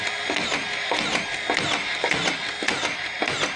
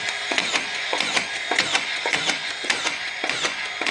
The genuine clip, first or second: first